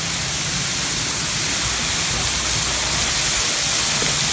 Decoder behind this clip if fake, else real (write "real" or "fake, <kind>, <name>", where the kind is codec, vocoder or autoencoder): real